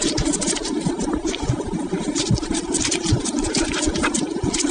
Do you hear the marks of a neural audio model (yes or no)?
no